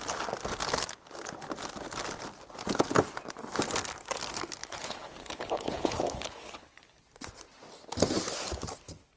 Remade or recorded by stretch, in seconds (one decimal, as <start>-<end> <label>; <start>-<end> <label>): 0.0-4.6 recorded; 4.6-7.0 remade; 7.0-9.2 recorded